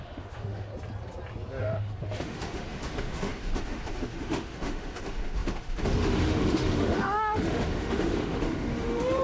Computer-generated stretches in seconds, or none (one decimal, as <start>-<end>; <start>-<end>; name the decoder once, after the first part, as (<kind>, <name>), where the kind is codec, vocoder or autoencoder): 0.0-0.7 (autoencoder, DAC-VAE); 1.6-9.2